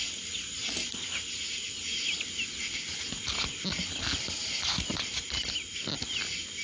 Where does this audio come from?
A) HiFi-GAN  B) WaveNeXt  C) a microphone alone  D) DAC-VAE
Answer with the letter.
C